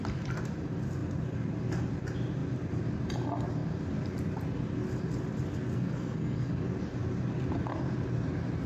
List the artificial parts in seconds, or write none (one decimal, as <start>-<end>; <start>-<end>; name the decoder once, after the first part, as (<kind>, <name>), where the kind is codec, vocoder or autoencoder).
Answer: 5.7-6.5 (codec, SNAC)